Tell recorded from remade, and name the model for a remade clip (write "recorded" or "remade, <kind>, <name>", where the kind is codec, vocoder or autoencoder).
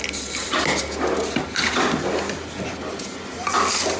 recorded